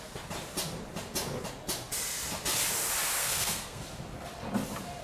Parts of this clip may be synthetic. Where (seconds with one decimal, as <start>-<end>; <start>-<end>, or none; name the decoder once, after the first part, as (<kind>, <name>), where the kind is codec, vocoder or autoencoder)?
3.2-3.8 (codec, SNAC)